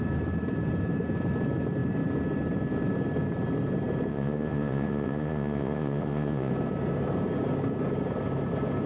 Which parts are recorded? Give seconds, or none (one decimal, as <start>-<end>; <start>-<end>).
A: 0.0-4.1; 6.5-8.9